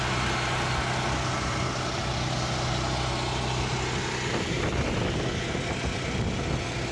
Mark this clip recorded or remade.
recorded